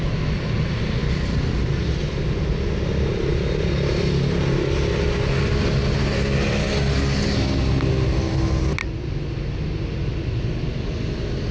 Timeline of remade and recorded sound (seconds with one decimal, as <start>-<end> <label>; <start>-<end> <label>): 0.0-11.5 recorded